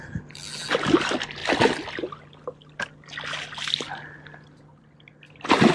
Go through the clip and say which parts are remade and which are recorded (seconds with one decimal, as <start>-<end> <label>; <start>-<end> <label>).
0.0-5.7 recorded

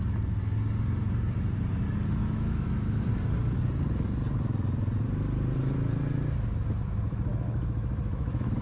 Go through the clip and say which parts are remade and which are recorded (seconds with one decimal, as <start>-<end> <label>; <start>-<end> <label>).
0.0-2.2 recorded; 2.2-3.1 remade; 3.1-7.3 recorded; 7.3-8.6 remade

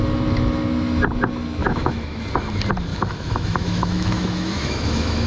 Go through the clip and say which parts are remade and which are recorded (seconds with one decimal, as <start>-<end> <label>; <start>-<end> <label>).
0.0-1.6 recorded; 1.6-2.2 remade; 2.2-2.9 recorded; 2.9-5.3 remade

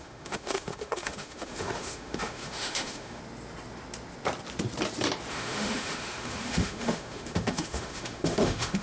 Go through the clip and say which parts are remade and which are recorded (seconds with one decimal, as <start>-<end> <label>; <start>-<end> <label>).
0.0-3.2 remade; 3.2-5.3 recorded; 5.3-8.8 remade

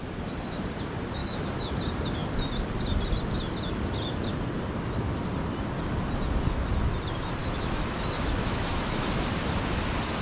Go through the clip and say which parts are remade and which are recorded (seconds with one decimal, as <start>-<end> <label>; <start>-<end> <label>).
0.0-1.2 recorded; 1.2-1.7 remade; 1.7-7.4 recorded; 7.4-9.3 remade; 9.3-10.2 recorded

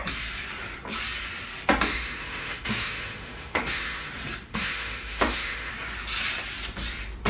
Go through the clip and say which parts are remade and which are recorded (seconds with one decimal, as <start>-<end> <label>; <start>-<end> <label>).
0.0-1.9 recorded; 1.9-4.1 remade; 4.1-4.5 recorded; 4.5-5.7 remade; 5.7-7.3 recorded